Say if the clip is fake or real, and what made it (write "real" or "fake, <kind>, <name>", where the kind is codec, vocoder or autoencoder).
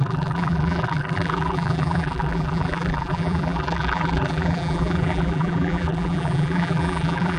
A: fake, vocoder, BigVGAN v2